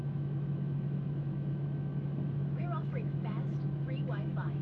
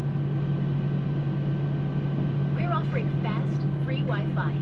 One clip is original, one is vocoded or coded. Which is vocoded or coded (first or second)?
first